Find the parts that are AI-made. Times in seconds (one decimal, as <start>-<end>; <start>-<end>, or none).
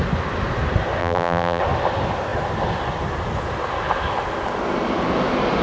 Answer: 1.0-1.6